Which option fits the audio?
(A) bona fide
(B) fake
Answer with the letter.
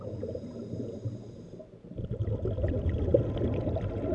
A